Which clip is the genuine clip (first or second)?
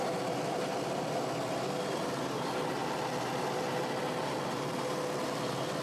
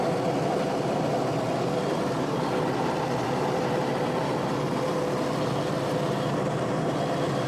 first